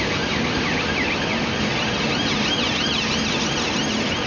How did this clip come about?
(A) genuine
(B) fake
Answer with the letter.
A